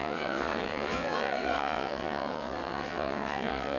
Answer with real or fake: fake